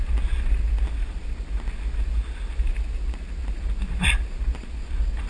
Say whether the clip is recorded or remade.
recorded